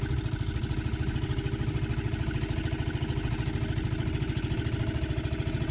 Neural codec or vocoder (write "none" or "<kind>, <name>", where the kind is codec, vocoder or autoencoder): none